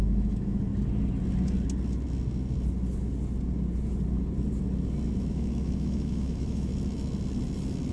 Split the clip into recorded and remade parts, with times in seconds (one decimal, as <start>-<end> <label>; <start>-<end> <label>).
0.0-0.7 remade; 0.7-5.3 recorded; 5.3-6.7 remade; 6.7-7.9 recorded